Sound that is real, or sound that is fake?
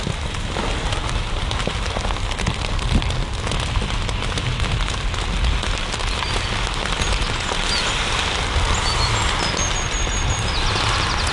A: real